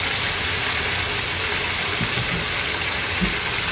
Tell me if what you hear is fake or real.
real